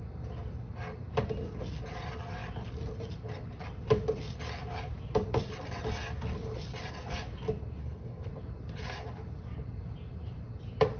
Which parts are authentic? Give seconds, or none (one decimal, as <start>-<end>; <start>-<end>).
0.0-7.8; 8.3-11.0